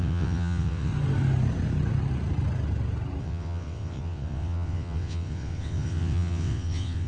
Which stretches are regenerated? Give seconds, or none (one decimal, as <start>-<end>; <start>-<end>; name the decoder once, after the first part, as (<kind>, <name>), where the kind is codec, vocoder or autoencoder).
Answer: 0.0-0.9 (vocoder, WaveNeXt); 3.2-7.1